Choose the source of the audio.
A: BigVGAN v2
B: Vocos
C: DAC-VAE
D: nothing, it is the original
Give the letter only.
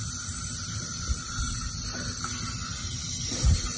D